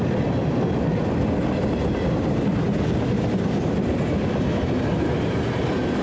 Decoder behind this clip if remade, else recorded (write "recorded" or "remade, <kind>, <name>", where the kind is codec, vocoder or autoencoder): recorded